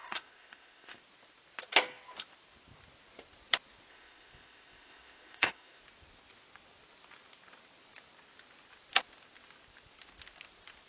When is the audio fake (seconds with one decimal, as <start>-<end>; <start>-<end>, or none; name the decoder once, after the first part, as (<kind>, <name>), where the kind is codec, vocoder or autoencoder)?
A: 0.0-1.0 (codec, ZipCodec); 3.9-5.8